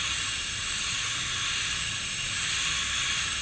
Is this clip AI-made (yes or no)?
no